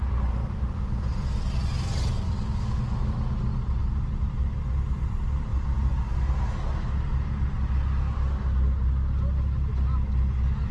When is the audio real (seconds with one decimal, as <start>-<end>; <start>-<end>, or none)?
0.0-10.7